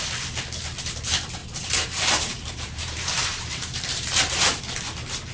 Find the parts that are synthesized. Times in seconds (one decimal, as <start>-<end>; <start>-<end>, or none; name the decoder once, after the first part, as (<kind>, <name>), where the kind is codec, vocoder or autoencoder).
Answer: 1.4-4.6 (vocoder, BigVGAN v2)